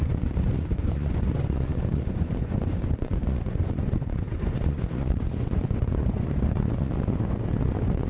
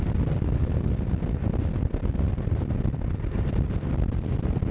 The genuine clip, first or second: second